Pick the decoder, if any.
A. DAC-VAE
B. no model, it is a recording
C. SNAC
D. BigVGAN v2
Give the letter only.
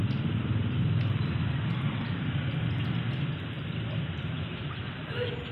D